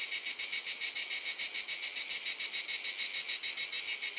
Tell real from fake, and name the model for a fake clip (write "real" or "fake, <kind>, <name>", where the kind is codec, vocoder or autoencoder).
real